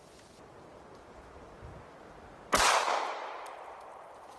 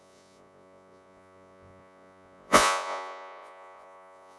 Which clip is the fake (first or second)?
second